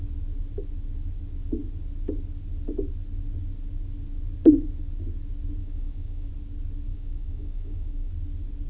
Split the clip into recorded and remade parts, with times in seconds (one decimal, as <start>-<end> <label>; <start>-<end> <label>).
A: 0.0-5.6 recorded; 5.6-6.3 remade; 6.3-6.9 recorded; 6.9-8.1 remade; 8.1-8.7 recorded